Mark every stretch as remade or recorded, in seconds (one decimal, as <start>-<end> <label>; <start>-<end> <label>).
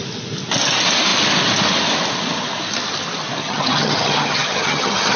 0.0-3.4 recorded; 3.4-5.2 remade